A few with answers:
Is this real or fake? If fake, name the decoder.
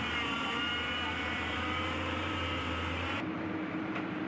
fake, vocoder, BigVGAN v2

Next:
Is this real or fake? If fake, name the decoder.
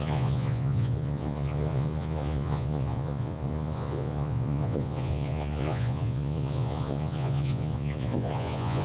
fake, vocoder, Vocos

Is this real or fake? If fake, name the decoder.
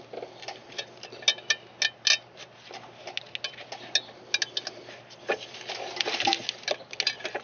real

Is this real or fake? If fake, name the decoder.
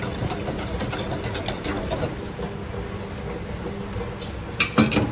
real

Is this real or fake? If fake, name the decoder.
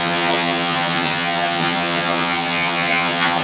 fake, vocoder, HiFi-GAN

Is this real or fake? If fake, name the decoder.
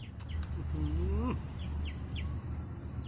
real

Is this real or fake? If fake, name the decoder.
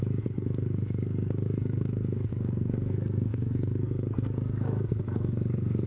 fake, codec, SNAC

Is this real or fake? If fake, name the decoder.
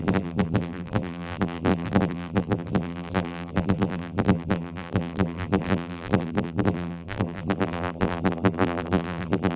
fake, vocoder, BigVGAN v2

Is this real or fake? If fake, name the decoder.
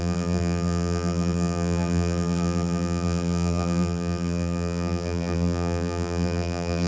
fake, vocoder, BigVGAN v2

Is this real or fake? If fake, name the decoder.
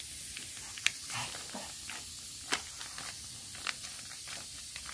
real